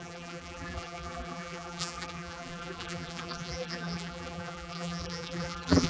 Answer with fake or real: fake